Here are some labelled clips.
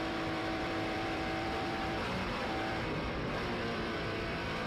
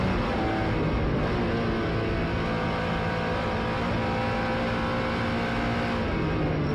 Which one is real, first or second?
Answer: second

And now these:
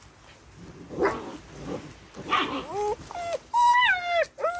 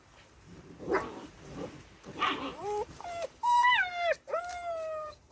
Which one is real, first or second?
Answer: first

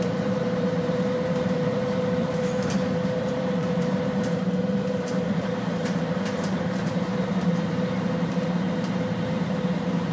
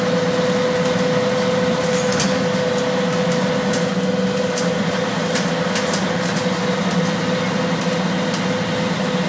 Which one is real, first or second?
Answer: second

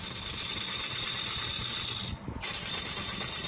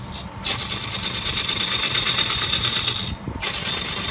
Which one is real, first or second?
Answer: first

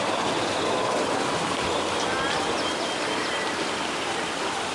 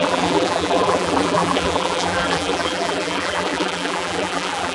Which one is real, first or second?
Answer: first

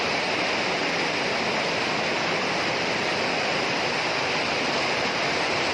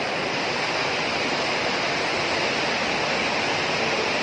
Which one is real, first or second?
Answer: second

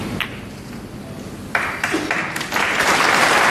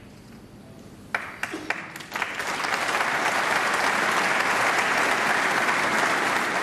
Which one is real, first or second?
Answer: second